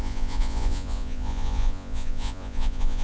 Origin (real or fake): fake